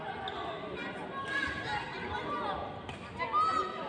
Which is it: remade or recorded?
recorded